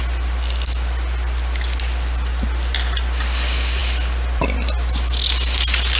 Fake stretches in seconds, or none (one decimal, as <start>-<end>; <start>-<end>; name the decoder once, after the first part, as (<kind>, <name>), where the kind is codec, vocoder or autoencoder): none